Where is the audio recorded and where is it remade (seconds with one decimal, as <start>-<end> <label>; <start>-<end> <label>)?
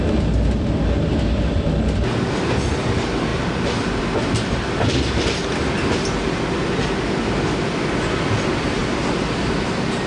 0.0-10.1 recorded